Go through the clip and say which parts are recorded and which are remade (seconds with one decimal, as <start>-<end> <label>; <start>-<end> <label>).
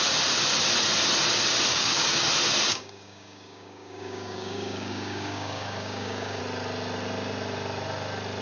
0.0-1.7 recorded; 1.7-2.3 remade; 2.3-2.7 recorded; 2.7-6.4 remade; 6.4-8.4 recorded